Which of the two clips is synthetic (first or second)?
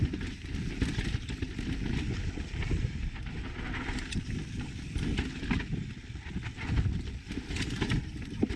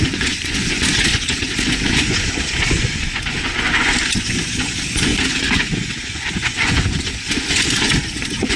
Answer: second